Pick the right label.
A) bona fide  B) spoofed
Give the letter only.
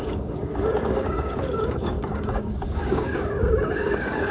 B